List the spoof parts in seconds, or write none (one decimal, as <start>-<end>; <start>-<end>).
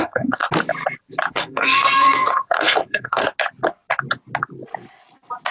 0.0-0.4; 1.3-3.2